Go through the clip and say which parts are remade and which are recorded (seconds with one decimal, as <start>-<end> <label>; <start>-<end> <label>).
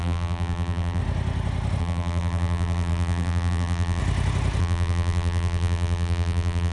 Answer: 0.0-1.0 remade; 1.0-1.8 recorded; 1.8-4.0 remade; 4.0-4.6 recorded; 4.6-6.7 remade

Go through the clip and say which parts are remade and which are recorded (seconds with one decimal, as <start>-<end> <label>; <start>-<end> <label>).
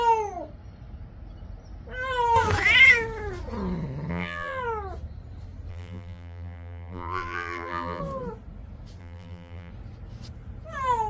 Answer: 0.0-4.1 recorded; 4.1-4.6 remade; 4.6-5.7 recorded; 5.7-8.0 remade; 8.0-9.0 recorded; 9.0-9.7 remade; 9.7-11.1 recorded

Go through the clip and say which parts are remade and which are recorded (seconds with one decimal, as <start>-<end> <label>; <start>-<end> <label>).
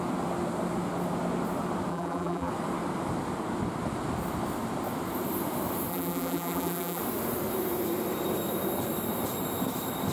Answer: 0.0-1.9 recorded; 1.9-2.5 remade; 2.5-5.9 recorded; 5.9-7.0 remade; 7.0-10.1 recorded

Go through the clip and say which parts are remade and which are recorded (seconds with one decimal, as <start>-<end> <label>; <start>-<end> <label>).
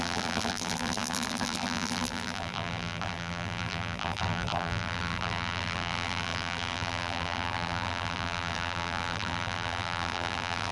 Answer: 0.0-10.7 remade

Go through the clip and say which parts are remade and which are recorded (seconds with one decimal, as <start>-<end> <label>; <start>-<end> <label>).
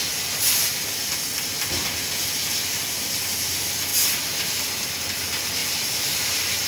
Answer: 0.0-5.6 recorded; 5.6-6.1 remade; 6.1-6.7 recorded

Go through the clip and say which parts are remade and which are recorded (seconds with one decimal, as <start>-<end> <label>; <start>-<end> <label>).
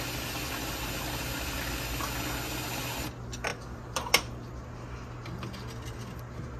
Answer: 0.0-3.5 recorded; 3.5-4.1 remade; 4.1-6.6 recorded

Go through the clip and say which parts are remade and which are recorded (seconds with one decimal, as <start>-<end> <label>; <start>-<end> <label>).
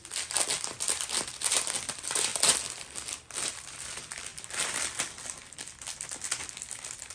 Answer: 0.0-7.1 recorded